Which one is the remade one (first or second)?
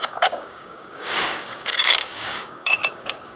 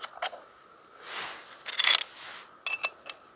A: first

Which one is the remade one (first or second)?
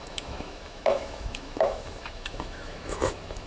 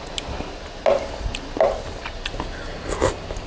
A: first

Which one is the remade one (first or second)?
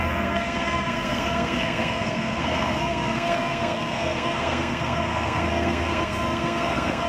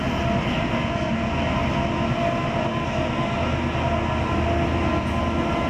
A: first